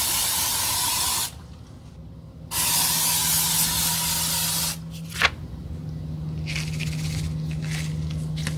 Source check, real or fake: real